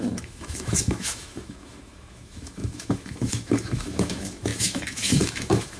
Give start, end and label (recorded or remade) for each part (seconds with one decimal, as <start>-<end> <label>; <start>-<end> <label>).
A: 0.0-5.8 remade